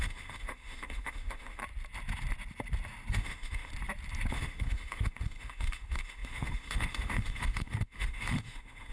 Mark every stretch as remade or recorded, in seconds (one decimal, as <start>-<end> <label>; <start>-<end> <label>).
0.0-1.6 remade; 1.6-3.1 recorded; 3.1-3.7 remade; 3.7-4.3 recorded; 4.3-8.9 remade